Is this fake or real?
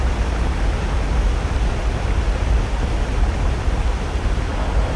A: real